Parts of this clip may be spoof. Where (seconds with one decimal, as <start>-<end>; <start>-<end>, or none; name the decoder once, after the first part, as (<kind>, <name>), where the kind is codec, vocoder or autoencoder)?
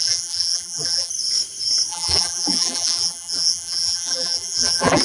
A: 0.0-1.1 (vocoder, BigVGAN v2); 1.9-5.0